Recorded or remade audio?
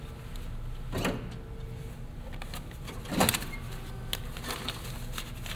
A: recorded